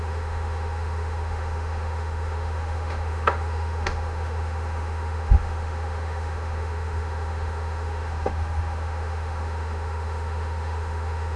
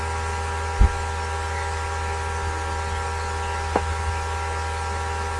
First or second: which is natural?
second